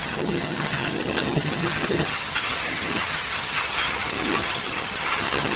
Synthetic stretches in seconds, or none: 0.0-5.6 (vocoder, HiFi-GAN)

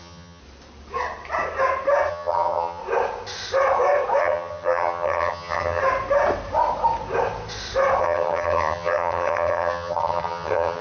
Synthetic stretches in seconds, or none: 0.0-0.4 (vocoder, HiFi-GAN); 2.1-2.8; 4.2-5.8; 8.0-10.8

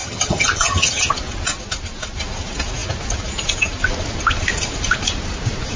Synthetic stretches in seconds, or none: 0.0-1.1 (vocoder, HiFi-GAN)

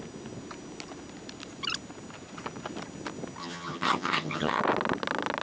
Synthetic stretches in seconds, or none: 3.4-4.6 (vocoder, HiFi-GAN)